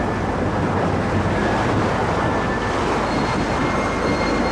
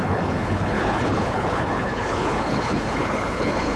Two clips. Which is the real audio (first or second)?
first